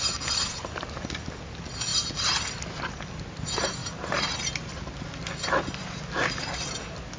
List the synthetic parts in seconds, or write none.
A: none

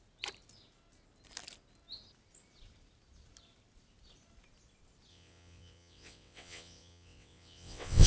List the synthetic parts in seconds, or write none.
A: 5.1-8.1 (vocoder, WaveNeXt)

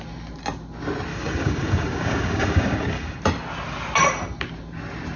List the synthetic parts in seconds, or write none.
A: 1.1-3.2 (codec, DAC)

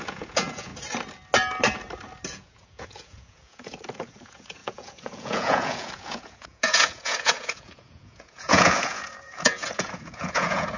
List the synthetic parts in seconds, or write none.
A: 0.0-0.7 (vocoder, Vocos); 2.3-10.8

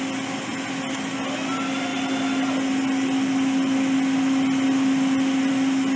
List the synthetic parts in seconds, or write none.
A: none

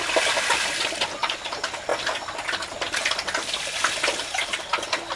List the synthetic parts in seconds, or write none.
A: none

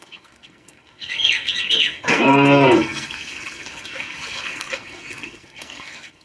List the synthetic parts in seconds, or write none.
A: 0.0-6.2 (codec, SNAC)